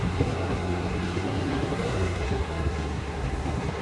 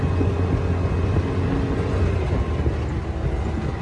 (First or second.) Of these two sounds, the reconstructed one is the first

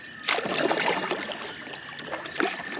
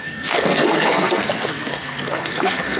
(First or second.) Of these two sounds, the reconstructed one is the second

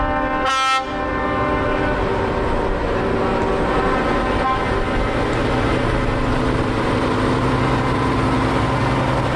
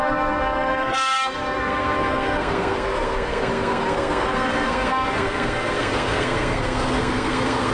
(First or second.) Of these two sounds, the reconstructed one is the second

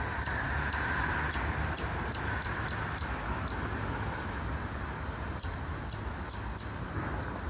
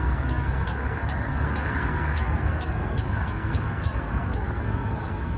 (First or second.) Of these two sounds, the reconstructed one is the second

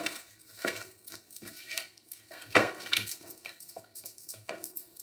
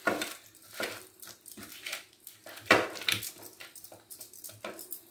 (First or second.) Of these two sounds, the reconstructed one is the first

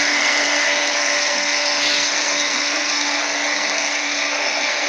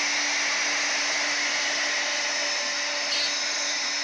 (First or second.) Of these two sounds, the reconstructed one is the first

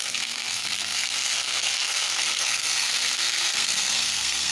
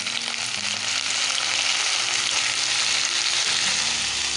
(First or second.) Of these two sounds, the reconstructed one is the first